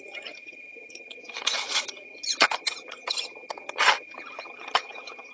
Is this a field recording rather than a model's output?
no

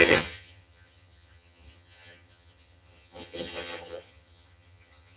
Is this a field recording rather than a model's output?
no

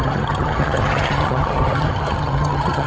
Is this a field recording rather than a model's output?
no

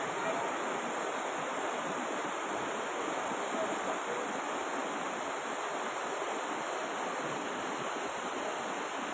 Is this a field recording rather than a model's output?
yes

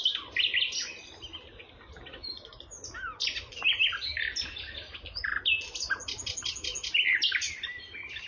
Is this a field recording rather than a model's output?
yes